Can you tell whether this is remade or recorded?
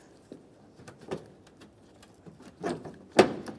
recorded